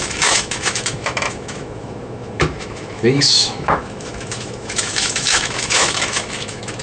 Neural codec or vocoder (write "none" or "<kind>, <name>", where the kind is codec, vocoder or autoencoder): autoencoder, DAC-VAE